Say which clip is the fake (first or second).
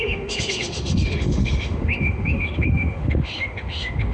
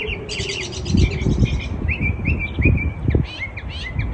first